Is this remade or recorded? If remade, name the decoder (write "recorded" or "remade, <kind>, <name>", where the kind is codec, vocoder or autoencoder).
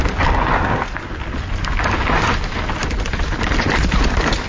recorded